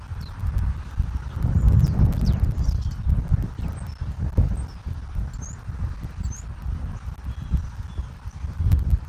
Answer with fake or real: real